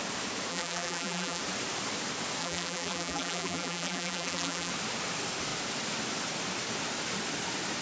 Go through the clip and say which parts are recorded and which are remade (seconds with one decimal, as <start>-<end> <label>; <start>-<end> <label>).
0.0-0.5 recorded; 0.5-1.4 remade; 1.4-2.4 recorded; 2.4-4.7 remade; 4.7-7.8 recorded